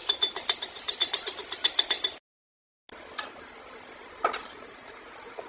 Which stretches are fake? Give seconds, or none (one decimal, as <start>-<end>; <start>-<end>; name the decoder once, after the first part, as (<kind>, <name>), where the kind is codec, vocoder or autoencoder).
4.4-5.5 (vocoder, Vocos)